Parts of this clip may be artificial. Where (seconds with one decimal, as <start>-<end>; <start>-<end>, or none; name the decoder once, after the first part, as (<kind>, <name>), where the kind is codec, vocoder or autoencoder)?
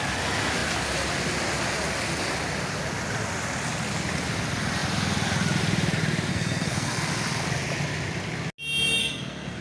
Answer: 6.3-7.1 (codec, SNAC); 9.0-9.6